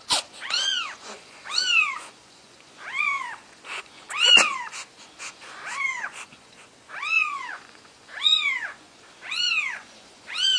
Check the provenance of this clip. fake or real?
fake